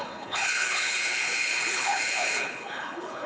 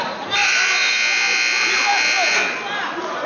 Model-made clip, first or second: first